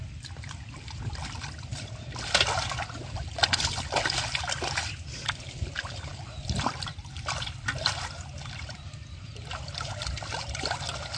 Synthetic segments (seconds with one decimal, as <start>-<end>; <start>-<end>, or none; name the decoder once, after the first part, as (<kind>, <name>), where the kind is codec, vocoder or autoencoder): 1.7-2.3 (vocoder, BigVGAN v2); 6.1-9.9